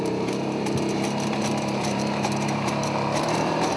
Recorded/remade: remade